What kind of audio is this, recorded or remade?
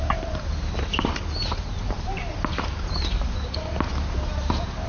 remade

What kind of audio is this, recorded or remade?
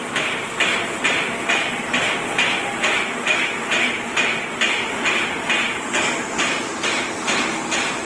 recorded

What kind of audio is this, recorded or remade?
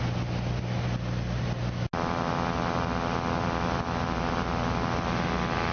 recorded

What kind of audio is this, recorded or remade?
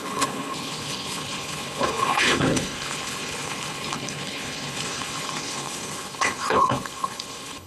remade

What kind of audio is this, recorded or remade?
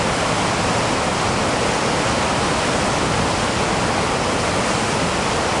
recorded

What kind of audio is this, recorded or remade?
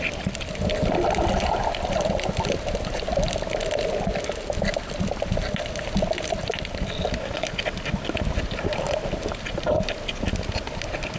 recorded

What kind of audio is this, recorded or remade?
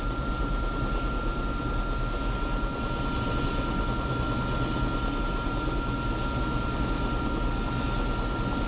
recorded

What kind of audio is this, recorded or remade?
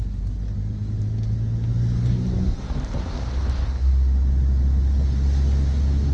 recorded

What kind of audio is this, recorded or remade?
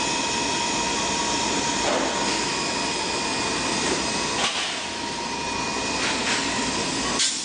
recorded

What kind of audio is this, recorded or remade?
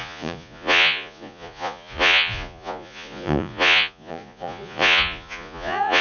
remade